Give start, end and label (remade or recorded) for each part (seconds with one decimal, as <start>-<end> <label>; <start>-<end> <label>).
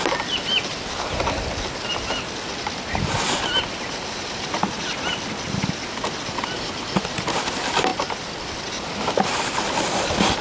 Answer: 0.0-7.9 recorded; 7.9-8.6 remade; 8.6-10.4 recorded